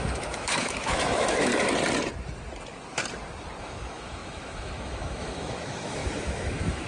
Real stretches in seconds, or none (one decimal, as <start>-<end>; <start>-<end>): 1.5-3.6